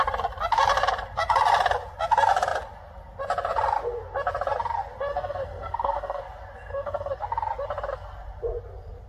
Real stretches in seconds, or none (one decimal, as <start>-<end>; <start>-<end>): 0.0-5.1; 6.2-6.7; 7.2-9.1